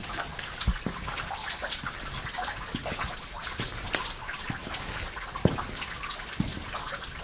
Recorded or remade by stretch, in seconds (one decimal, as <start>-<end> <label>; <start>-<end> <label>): 0.0-7.2 recorded